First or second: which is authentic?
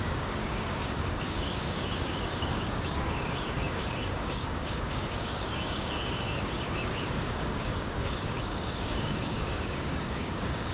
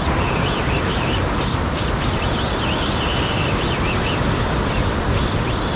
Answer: second